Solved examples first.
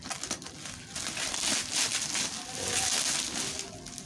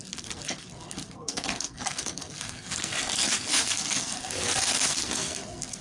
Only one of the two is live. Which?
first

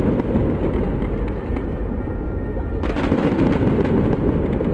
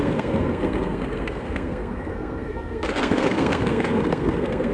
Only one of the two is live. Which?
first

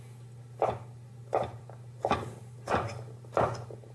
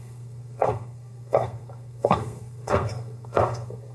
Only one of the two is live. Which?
first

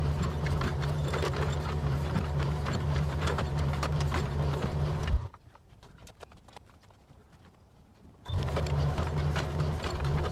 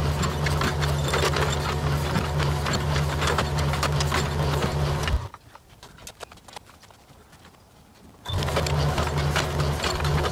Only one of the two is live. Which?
second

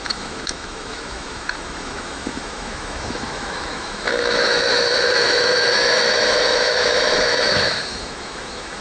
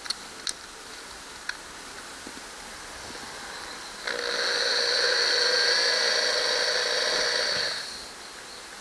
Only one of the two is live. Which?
second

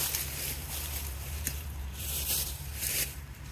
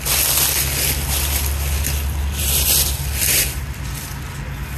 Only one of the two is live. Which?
second